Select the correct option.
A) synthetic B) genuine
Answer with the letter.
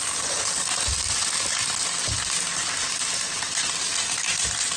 B